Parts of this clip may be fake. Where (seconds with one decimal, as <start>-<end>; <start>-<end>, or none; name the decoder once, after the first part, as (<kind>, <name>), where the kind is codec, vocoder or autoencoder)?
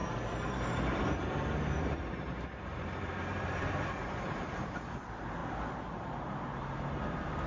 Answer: 0.0-5.4 (vocoder, BigVGAN v2); 6.6-7.5